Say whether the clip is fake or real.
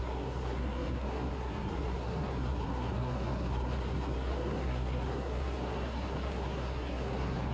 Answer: fake